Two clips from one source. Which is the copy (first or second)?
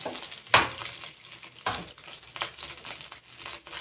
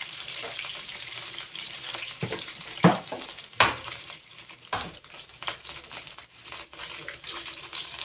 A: second